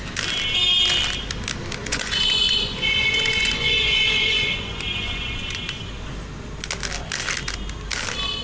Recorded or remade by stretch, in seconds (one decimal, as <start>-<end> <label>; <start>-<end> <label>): 0.0-1.8 recorded; 1.8-5.6 remade; 5.6-8.4 recorded